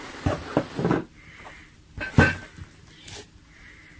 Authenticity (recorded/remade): recorded